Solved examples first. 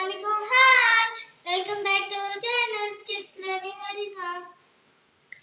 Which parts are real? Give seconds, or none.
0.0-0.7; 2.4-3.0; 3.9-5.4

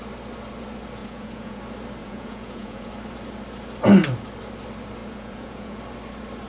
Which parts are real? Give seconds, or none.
0.0-1.0; 1.6-2.0; 2.9-5.0; 5.8-6.5